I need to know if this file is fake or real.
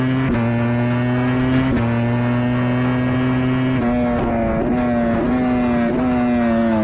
real